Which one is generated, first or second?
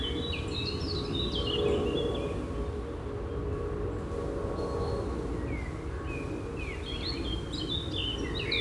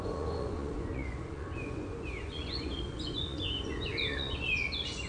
second